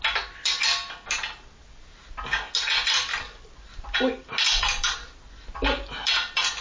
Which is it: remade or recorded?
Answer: recorded